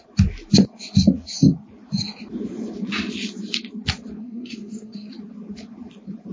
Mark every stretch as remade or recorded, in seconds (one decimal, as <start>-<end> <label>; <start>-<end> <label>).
0.0-4.2 recorded; 4.2-5.1 remade; 5.1-6.3 recorded